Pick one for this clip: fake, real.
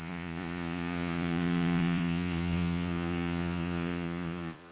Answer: fake